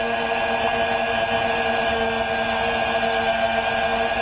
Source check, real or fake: real